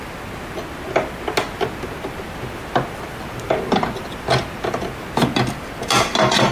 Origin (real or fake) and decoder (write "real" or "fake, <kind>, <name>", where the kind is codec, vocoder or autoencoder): real